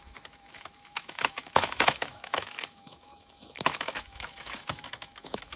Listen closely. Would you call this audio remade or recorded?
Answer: remade